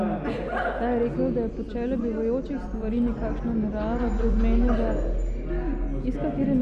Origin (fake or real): real